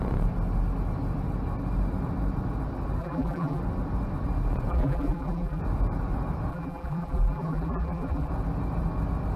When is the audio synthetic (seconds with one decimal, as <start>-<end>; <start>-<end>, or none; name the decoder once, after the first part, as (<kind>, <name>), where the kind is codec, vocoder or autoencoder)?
3.0-3.6 (vocoder, BigVGAN v2); 4.7-5.6; 6.5-8.3